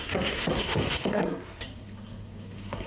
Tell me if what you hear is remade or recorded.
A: remade